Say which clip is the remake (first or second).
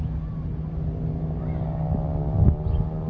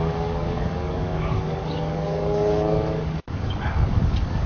second